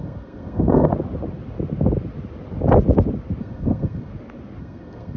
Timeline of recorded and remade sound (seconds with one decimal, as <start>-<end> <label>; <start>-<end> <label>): 0.0-0.9 remade; 0.9-3.4 recorded; 3.4-4.1 remade; 4.1-4.6 recorded; 4.6-5.2 remade